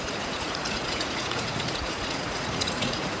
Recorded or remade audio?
remade